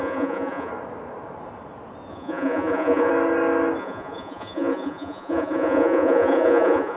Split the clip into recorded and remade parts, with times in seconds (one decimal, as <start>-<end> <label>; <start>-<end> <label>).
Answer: 0.0-0.7 remade; 0.7-2.1 recorded; 2.1-3.1 remade; 3.1-3.8 recorded; 3.8-7.0 remade